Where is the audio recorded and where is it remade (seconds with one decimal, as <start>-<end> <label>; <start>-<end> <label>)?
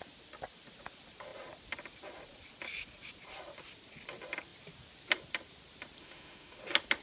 0.0-6.0 recorded; 6.0-6.6 remade; 6.6-7.0 recorded